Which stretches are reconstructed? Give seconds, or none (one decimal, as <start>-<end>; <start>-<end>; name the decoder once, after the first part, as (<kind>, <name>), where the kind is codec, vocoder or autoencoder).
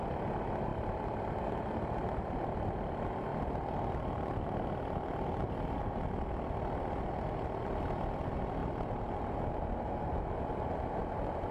8.6-9.4 (vocoder, BigVGAN v2)